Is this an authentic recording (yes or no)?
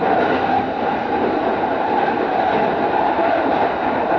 no